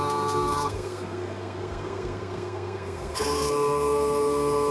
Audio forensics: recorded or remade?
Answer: remade